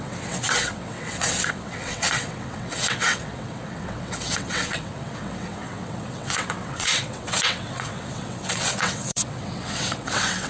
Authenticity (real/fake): fake